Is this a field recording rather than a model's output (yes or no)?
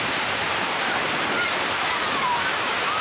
no